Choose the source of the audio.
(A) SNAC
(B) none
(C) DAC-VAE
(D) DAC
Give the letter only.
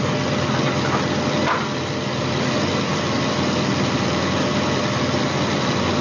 B